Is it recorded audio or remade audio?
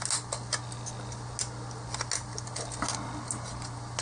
recorded